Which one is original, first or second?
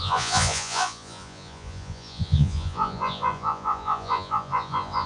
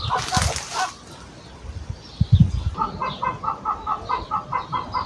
second